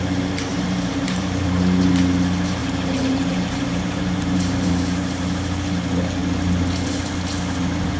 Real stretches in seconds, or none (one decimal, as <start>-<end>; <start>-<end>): 0.0-0.5; 1.9-2.6; 4.7-8.0